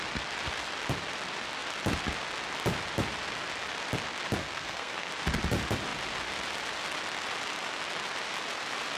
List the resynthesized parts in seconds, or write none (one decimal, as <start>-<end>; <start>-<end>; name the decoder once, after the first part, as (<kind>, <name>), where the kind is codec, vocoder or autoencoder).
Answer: 4.4-5.1 (codec, SNAC)